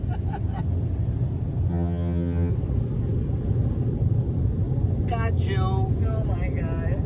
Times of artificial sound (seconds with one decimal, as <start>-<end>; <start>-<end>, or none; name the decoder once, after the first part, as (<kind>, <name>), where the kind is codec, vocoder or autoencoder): 1.7-2.5 (vocoder, HiFi-GAN)